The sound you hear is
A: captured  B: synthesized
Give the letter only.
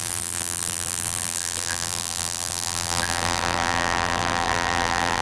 B